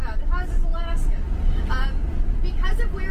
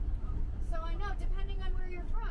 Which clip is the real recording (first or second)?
first